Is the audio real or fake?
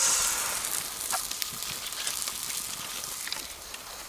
real